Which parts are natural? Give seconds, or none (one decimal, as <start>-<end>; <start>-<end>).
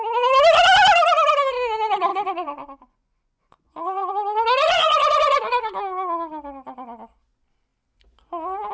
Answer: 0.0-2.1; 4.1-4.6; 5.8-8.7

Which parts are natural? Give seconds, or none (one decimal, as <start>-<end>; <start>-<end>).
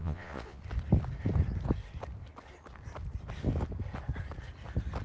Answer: 0.6-5.0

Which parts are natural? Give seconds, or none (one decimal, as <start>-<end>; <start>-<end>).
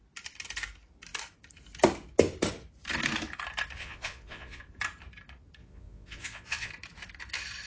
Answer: 0.0-3.8; 4.6-5.6; 6.7-7.7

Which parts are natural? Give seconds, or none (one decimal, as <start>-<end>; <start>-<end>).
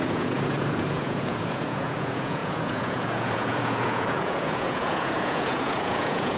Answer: none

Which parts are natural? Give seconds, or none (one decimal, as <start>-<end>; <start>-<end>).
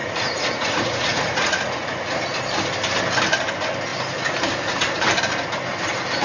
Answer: 2.2-6.2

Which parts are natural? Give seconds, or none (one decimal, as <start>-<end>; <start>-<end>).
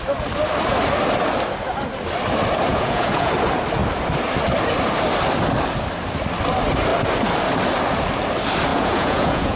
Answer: 0.0-2.7; 3.3-8.7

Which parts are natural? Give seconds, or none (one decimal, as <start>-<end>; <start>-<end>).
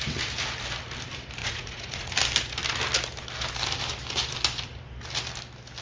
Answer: 0.0-1.4; 2.1-5.8